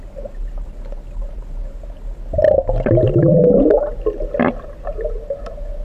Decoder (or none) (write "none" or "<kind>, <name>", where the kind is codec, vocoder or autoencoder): none